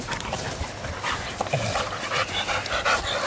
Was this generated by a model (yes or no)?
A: no